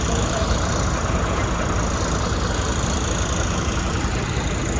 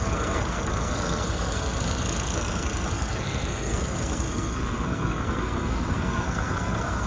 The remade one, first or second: second